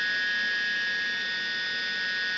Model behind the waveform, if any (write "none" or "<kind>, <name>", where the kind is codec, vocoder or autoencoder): none